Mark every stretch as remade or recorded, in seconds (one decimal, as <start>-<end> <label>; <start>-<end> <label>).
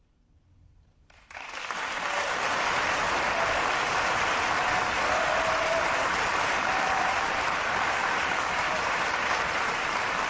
0.0-10.3 recorded